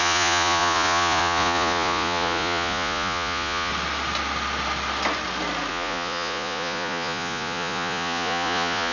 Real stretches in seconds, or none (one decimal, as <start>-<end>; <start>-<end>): 3.7-5.7